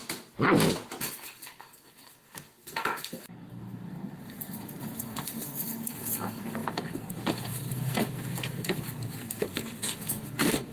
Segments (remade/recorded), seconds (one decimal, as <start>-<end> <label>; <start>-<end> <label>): 0.0-1.0 recorded; 1.0-10.7 remade